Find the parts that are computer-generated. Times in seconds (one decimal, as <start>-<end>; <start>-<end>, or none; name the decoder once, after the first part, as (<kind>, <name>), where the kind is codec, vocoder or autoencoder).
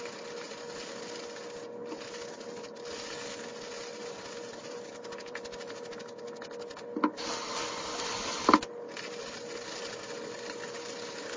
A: 4.6-5.9 (vocoder, BigVGAN v2)